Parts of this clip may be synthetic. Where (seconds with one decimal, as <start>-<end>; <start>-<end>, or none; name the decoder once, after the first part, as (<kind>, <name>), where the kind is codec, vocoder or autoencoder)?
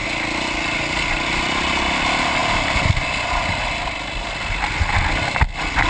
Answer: none